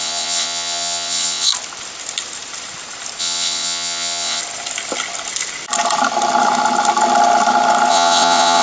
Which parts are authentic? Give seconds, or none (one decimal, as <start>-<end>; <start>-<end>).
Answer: 1.5-3.2; 4.4-7.9

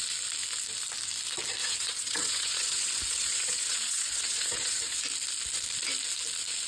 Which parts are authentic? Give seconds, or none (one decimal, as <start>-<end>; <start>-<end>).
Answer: 0.0-1.6; 5.0-6.7

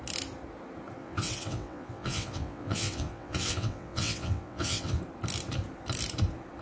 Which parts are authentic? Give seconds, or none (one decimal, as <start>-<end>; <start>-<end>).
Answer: 0.0-1.0; 5.0-6.6

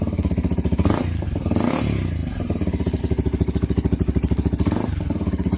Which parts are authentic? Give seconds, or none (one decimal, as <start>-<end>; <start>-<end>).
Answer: 0.0-5.6

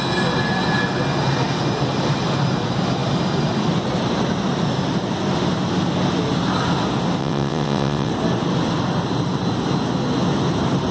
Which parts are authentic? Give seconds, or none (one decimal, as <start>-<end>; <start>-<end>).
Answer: 0.0-7.2; 8.1-10.9

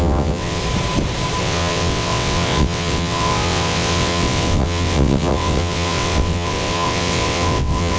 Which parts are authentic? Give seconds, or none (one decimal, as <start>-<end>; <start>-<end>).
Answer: 0.6-1.4

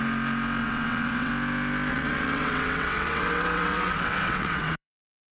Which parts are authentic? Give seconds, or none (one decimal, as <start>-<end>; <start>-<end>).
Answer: 0.0-0.6; 1.3-1.9

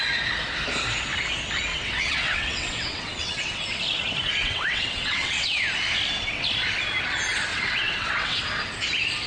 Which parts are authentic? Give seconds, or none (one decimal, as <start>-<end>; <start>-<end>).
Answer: 0.0-1.7; 3.6-4.4; 5.6-7.5; 8.4-9.3